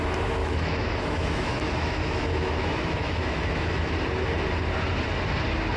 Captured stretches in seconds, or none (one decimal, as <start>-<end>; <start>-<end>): 0.0-0.4; 3.9-5.8